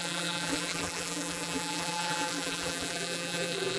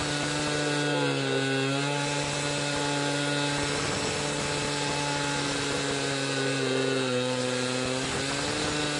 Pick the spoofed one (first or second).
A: first